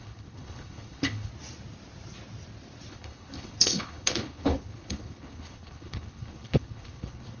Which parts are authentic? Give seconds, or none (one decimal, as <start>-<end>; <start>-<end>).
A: 1.3-2.9